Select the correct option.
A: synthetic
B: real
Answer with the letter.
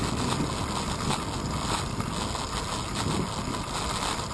B